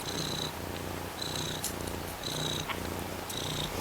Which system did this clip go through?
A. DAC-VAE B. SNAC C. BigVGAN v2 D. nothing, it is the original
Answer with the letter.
D